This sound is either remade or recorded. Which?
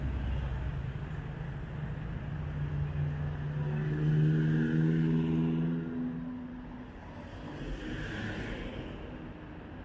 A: recorded